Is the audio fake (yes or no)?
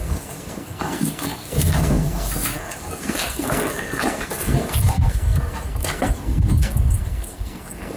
yes